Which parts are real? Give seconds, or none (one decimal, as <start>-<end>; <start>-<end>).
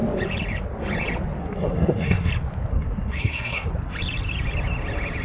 0.0-1.4; 2.3-2.7; 3.7-5.2